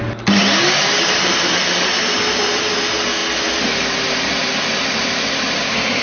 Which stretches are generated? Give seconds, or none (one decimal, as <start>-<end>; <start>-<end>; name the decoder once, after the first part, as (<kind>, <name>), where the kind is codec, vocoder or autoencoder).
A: none